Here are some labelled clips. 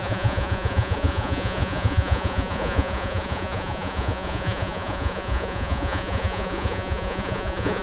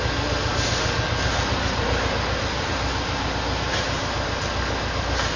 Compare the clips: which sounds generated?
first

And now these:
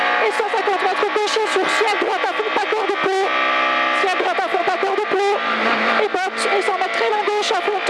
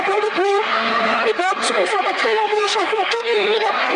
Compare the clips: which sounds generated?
second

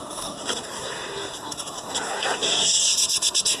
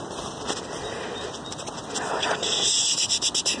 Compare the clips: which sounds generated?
first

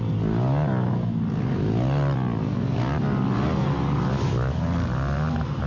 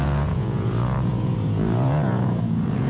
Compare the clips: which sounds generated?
second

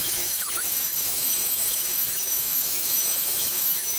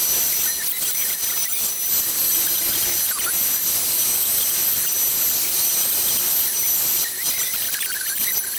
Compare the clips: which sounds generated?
first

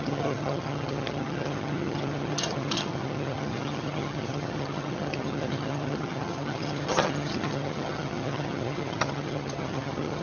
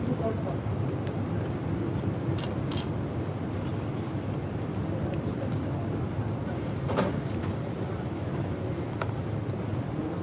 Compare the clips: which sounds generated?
first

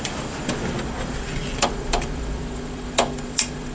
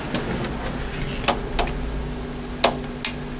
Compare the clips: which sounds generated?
first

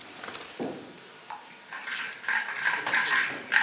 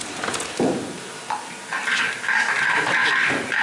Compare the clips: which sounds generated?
first